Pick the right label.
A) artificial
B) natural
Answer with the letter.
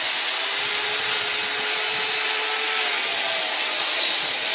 B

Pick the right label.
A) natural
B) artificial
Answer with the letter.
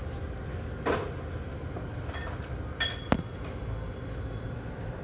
A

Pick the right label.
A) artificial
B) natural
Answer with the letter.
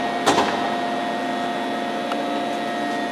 B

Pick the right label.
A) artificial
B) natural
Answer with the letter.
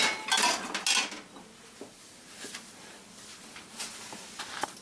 B